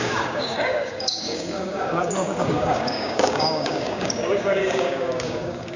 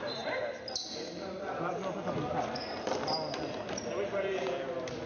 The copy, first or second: first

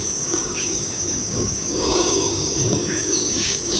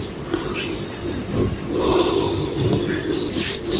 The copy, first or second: first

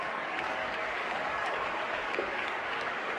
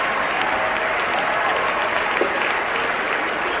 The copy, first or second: first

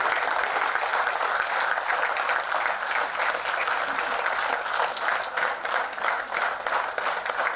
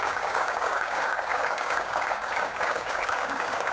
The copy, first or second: second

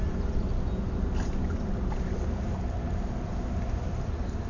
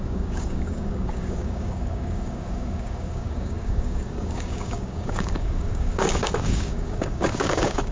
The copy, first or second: second